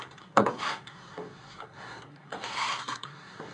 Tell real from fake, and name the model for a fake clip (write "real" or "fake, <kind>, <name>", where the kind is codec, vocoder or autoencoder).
fake, codec, SNAC